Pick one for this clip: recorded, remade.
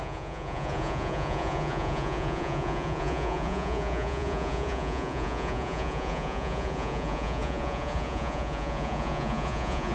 remade